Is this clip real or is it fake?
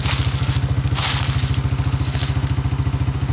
real